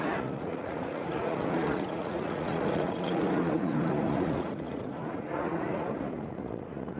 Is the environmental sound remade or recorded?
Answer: remade